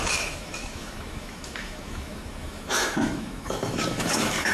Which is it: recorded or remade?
remade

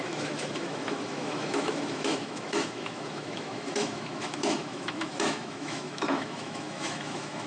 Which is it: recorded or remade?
remade